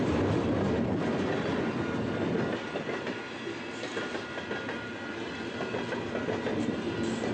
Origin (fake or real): real